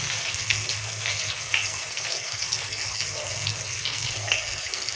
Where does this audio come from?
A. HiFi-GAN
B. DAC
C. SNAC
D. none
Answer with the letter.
C